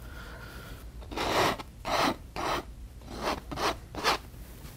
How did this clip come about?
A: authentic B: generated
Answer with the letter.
B